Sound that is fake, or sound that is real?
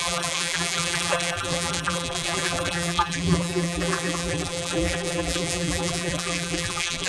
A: fake